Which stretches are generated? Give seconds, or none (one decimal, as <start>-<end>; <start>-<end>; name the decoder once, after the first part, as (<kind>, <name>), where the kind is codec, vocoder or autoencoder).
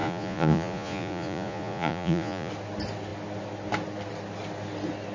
0.0-2.5 (vocoder, Vocos)